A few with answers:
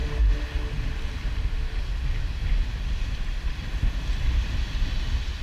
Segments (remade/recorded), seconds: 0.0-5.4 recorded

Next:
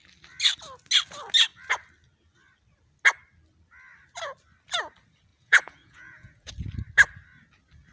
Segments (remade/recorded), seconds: 0.0-5.3 recorded; 5.3-6.5 remade; 6.5-7.9 recorded

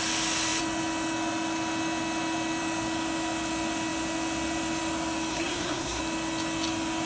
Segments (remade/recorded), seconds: 0.0-5.3 recorded; 5.3-6.0 remade; 6.0-7.1 recorded

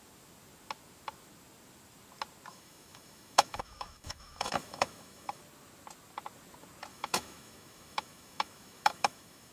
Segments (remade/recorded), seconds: 0.0-2.5 recorded; 2.5-5.4 remade; 5.4-6.9 recorded; 6.9-9.5 remade

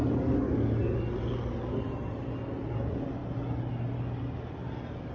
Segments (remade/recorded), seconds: 0.0-5.1 recorded

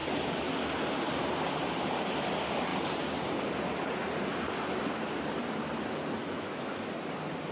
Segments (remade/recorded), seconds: 0.0-6.2 recorded; 6.2-6.9 remade; 6.9-7.5 recorded

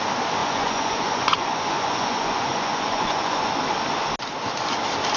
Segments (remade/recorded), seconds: 0.0-0.4 recorded; 0.4-3.5 remade; 3.5-5.2 recorded

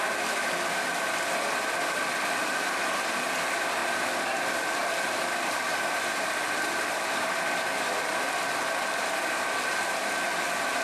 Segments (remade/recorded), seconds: 0.0-10.8 recorded